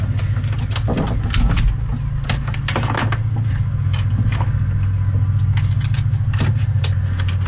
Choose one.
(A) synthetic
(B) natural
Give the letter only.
B